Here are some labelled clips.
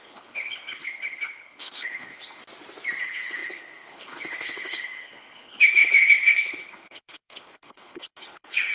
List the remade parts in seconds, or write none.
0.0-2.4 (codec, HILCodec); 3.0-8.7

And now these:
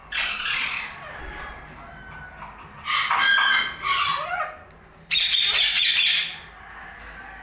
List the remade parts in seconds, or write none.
none

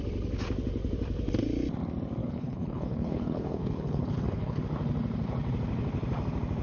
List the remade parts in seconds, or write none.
2.2-4.6 (codec, HILCodec)